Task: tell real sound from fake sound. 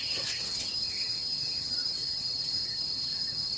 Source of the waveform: fake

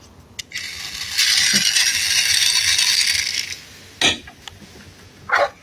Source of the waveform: real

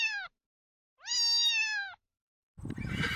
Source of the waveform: real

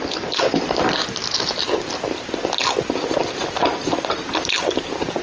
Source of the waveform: real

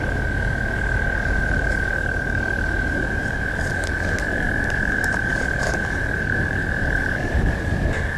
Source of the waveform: fake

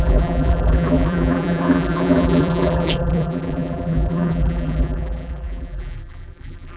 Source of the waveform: fake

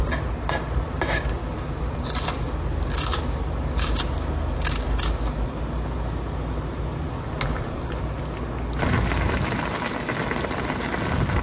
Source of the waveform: real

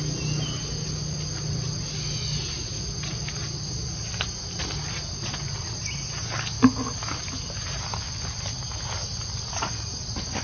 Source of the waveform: real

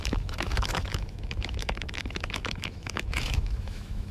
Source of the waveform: fake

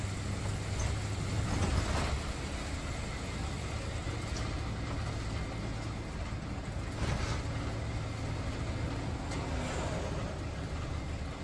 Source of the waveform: real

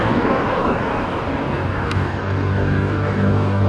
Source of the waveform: fake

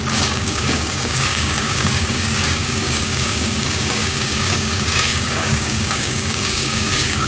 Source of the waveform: fake